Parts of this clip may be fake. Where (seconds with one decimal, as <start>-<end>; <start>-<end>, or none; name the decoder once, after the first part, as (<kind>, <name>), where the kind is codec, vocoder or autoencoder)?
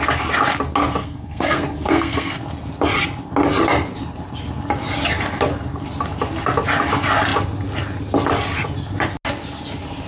1.0-2.4 (codec, SNAC)